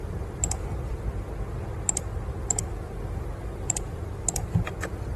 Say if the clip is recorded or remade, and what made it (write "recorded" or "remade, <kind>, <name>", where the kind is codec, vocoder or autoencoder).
recorded